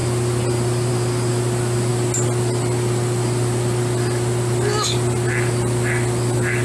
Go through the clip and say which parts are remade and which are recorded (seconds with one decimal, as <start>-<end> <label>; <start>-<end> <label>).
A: 0.0-6.6 recorded